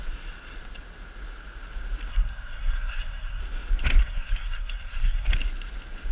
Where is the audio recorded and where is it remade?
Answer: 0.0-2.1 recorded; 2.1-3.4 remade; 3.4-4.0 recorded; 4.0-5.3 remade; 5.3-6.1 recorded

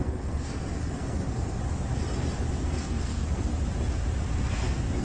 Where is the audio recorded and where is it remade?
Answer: 0.0-1.6 remade; 1.6-2.6 recorded; 2.6-3.5 remade; 3.5-5.0 recorded

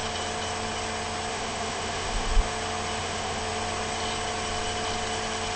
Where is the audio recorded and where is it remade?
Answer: 0.0-1.3 recorded; 1.3-2.3 remade; 2.3-3.0 recorded; 3.0-3.4 remade; 3.4-5.6 recorded